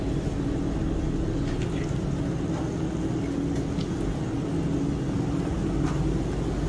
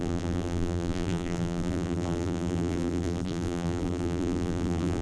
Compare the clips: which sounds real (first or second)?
first